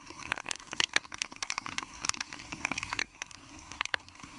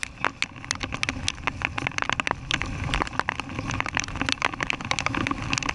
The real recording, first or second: second